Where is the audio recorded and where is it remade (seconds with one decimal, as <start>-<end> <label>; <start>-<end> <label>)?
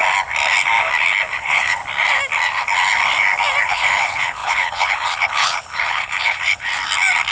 0.0-1.3 recorded; 1.3-1.8 remade; 1.8-3.6 recorded; 3.6-6.7 remade; 6.7-7.3 recorded